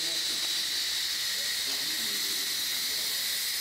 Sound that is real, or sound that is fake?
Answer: real